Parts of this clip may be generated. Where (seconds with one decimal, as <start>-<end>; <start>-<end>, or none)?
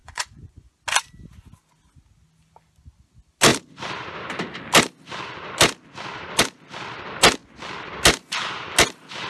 0.0-0.7